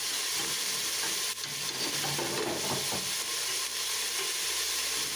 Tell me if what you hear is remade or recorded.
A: recorded